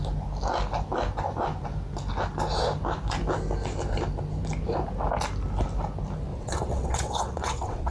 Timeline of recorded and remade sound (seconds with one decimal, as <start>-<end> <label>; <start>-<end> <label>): 0.0-6.3 recorded; 6.3-7.9 remade